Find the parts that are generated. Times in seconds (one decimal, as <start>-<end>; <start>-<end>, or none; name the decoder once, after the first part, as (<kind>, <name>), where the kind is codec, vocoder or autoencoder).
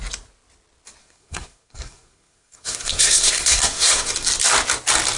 1.0-4.1 (codec, SNAC)